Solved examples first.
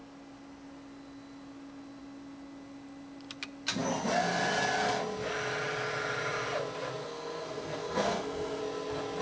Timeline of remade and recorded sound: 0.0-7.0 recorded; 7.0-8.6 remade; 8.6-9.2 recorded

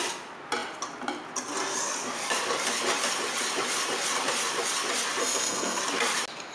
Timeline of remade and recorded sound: 0.0-5.2 recorded; 5.2-5.8 remade; 5.8-6.5 recorded

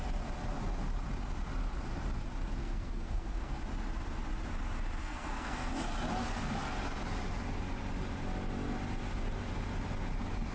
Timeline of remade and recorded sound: 0.0-2.6 recorded; 2.6-3.6 remade; 3.6-5.0 recorded; 5.0-5.7 remade; 5.7-10.5 recorded

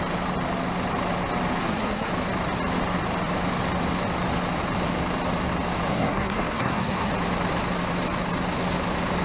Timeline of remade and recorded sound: 0.0-1.6 recorded; 1.6-2.1 remade; 2.1-5.9 recorded; 5.9-7.1 remade; 7.1-9.2 recorded

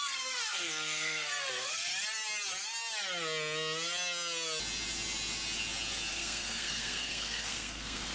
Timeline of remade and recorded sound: 0.0-1.9 remade; 1.9-6.1 recorded; 6.1-8.1 remade

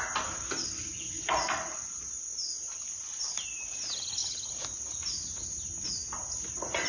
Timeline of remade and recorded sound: 0.0-6.9 recorded

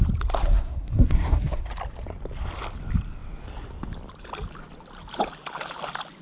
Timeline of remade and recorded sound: 0.0-0.4 recorded; 0.4-1.7 remade; 1.7-6.2 recorded